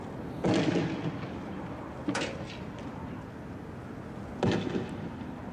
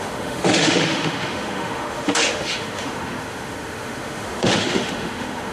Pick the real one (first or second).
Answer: first